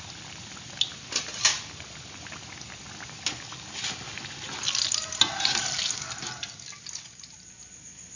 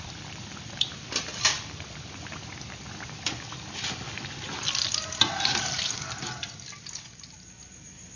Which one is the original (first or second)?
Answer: first